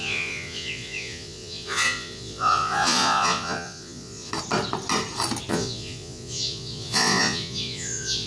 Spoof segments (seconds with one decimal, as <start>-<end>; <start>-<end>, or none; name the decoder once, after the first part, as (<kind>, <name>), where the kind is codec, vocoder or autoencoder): 0.0-4.3 (vocoder, Vocos); 5.5-8.3